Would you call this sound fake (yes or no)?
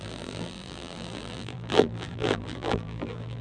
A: yes